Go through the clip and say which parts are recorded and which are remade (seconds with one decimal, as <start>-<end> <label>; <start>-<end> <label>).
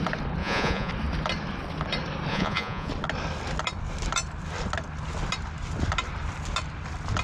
0.0-0.4 recorded; 0.4-0.9 remade; 0.9-2.3 recorded; 2.3-2.9 remade; 2.9-7.2 recorded